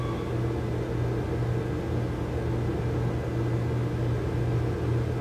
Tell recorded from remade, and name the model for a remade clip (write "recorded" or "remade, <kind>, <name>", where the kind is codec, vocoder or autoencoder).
recorded